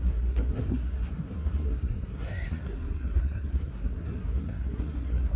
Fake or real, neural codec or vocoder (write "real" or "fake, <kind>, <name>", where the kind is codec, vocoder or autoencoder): fake, codec, SNAC